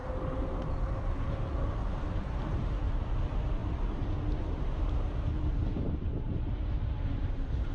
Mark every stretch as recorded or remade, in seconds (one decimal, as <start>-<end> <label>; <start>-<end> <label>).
0.0-1.8 recorded; 1.8-3.1 remade; 3.1-3.6 recorded; 3.6-7.7 remade